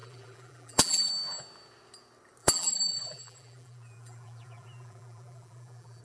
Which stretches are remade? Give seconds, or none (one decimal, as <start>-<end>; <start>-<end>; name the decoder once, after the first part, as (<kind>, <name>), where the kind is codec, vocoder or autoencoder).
0.0-1.1 (vocoder, BigVGAN v2); 2.4-6.0